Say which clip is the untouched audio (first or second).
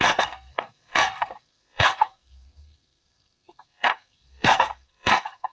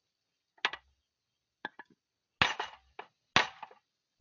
second